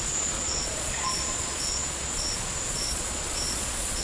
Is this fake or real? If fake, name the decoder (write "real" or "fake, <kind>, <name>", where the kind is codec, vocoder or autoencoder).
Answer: fake, vocoder, Vocos